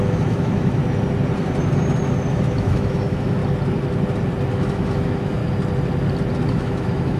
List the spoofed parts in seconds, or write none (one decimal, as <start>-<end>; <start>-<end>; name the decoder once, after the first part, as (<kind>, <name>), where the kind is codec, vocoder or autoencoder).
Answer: 0.0-0.8 (autoencoder, DAC-VAE); 2.3-3.4; 4.5-5.4; 6.5-7.2